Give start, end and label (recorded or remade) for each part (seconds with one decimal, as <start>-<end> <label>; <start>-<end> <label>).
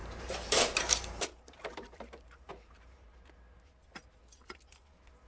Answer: 0.0-3.2 remade; 3.2-5.3 recorded